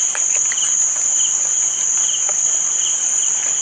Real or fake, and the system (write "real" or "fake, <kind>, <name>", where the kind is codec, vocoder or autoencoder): real